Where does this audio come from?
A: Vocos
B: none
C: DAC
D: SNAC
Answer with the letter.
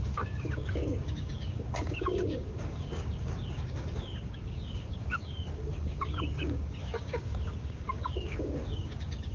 C